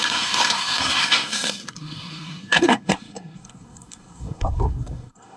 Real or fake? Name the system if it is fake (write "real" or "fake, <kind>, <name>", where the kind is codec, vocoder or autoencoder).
fake, codec, SNAC